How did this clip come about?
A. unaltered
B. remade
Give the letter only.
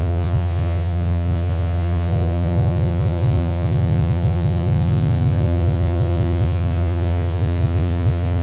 B